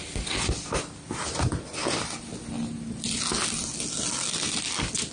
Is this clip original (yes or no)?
yes